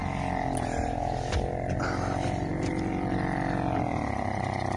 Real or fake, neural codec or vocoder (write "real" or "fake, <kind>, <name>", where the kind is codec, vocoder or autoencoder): real